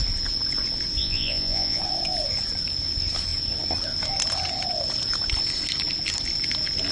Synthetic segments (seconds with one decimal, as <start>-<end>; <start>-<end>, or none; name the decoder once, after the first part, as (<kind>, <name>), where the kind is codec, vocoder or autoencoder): 1.0-1.8 (vocoder, Vocos)